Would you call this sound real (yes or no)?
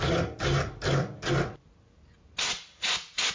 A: yes